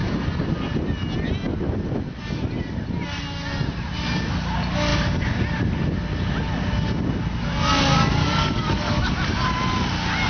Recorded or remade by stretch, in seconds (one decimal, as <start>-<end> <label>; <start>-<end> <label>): 0.0-8.2 recorded; 8.2-9.1 remade; 9.1-10.3 recorded